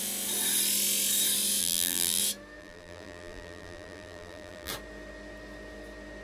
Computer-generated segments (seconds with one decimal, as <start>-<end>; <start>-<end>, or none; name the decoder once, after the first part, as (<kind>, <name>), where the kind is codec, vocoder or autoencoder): 1.6-2.2 (vocoder, BigVGAN v2); 2.6-4.7